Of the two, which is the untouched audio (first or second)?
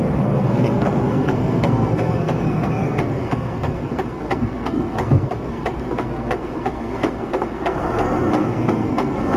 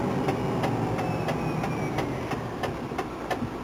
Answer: second